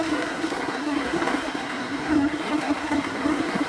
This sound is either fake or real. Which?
fake